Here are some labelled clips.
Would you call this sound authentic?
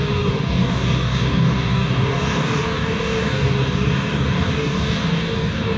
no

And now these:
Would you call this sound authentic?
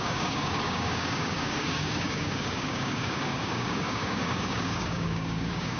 no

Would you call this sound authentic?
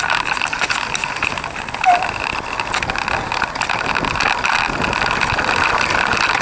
yes